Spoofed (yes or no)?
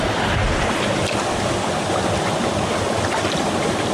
no